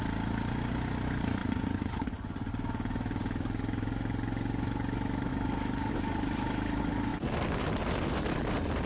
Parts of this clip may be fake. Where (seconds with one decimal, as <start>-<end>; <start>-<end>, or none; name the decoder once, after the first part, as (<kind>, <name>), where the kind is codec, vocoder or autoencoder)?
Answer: 1.4-2.5 (vocoder, Vocos)